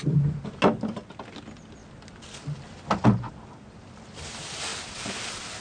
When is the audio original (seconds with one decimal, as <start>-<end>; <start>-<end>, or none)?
0.0-5.6